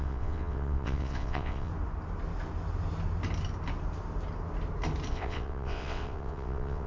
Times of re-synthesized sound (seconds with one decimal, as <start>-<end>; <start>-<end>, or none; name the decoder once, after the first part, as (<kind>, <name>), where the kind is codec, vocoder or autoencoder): 0.0-1.7 (vocoder, WaveNeXt); 5.1-6.9